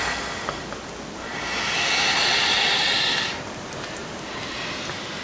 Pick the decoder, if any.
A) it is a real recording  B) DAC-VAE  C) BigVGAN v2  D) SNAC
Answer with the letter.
A